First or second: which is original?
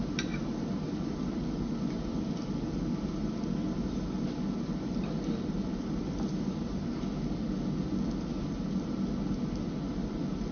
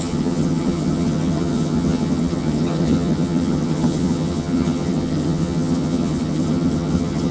first